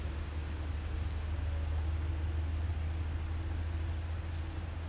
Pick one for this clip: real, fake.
real